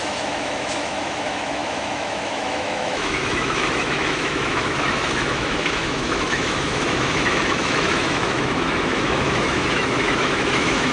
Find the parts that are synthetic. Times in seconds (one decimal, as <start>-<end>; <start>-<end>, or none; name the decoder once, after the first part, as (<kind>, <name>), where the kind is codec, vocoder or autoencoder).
0.0-10.9 (autoencoder, DAC-VAE)